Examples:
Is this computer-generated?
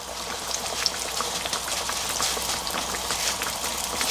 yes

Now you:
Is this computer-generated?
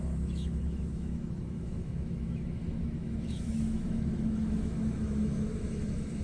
yes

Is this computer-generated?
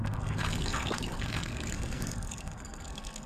yes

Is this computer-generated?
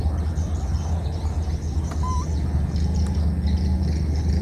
no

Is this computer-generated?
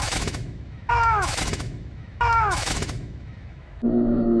yes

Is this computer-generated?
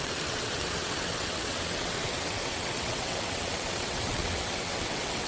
yes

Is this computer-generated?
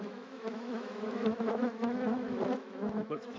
yes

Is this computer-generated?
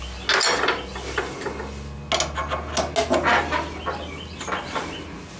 no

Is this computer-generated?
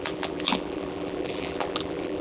yes